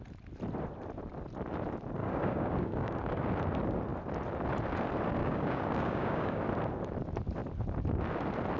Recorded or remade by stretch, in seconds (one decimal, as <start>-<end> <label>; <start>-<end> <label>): 0.0-2.0 recorded; 2.0-3.2 remade; 3.2-5.2 recorded; 5.2-6.4 remade; 6.4-8.6 recorded